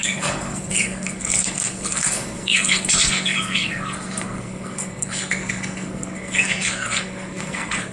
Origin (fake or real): fake